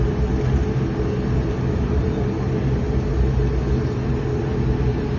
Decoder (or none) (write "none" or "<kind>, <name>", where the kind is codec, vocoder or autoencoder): none